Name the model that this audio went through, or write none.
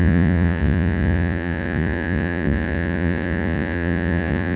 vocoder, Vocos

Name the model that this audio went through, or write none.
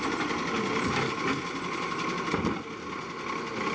none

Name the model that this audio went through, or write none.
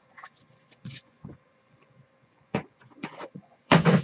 vocoder, Vocos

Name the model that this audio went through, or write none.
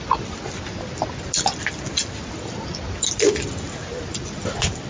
none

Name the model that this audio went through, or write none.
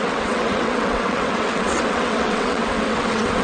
vocoder, WaveNeXt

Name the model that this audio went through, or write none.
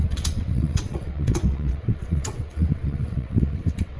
vocoder, WaveNeXt